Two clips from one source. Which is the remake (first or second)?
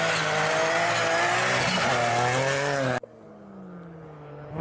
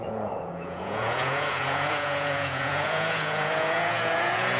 second